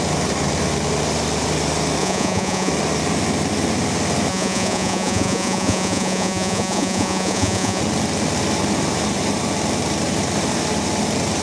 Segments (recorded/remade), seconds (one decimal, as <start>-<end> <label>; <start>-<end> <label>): 0.0-2.0 recorded; 2.0-2.7 remade; 2.7-4.3 recorded; 4.3-7.8 remade; 7.8-11.4 recorded